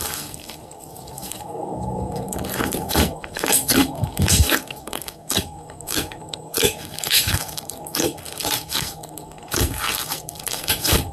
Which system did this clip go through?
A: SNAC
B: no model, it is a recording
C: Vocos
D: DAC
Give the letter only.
A